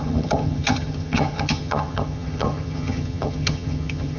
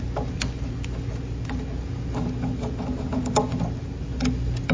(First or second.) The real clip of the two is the second